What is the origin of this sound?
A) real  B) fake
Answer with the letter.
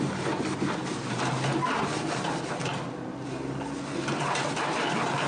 A